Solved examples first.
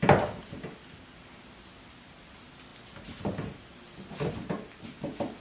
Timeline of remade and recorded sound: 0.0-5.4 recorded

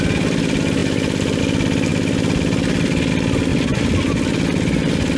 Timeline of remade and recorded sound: 0.0-5.2 recorded

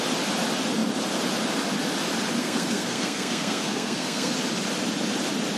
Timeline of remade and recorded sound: 0.0-2.4 recorded; 2.4-4.3 remade; 4.3-5.6 recorded

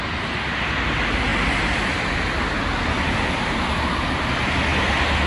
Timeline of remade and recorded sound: 0.0-5.3 recorded